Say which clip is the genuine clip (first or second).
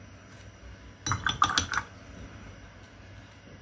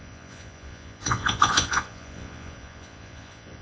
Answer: first